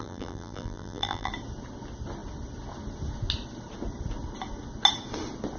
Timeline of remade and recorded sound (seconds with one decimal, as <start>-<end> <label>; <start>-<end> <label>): 0.0-1.3 remade; 1.3-5.6 recorded

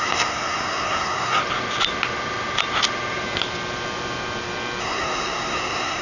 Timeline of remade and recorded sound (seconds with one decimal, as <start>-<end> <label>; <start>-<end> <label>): 0.0-1.4 remade; 1.4-4.8 recorded; 4.8-6.0 remade